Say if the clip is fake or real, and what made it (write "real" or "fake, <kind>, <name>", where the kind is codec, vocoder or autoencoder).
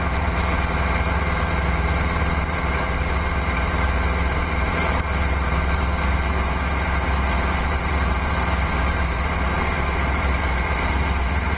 fake, vocoder, BigVGAN v2